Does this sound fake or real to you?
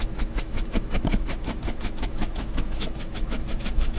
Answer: fake